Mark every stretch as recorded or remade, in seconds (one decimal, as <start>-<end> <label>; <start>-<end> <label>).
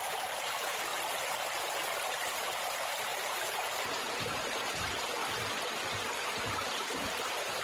0.0-0.9 remade; 0.9-2.0 recorded; 2.0-5.2 remade; 5.2-6.1 recorded; 6.1-7.6 remade